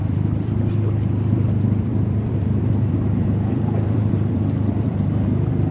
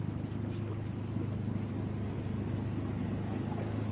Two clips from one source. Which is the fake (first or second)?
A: first